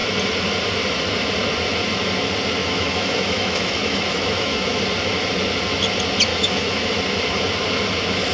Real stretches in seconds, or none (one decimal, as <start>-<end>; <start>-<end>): 0.0-2.6; 4.8-6.3; 6.9-8.3